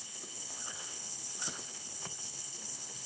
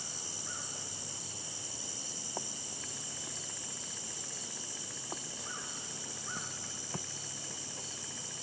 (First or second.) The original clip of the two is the second